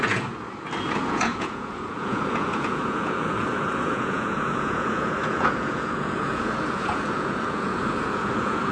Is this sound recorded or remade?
remade